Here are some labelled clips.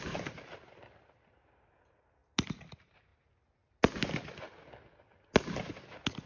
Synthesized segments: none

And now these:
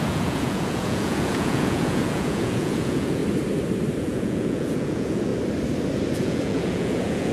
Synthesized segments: 0.0-3.2 (vocoder, Vocos); 4.0-5.3; 6.1-7.3

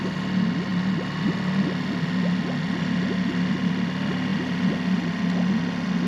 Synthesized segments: none

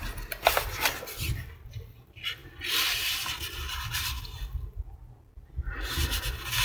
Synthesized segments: 0.0-6.6 (vocoder, BigVGAN v2)